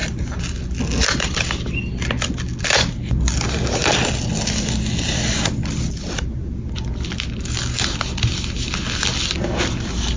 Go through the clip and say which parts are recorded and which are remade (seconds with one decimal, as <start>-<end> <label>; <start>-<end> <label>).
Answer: 0.0-10.2 recorded